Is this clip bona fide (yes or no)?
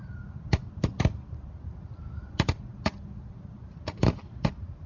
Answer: yes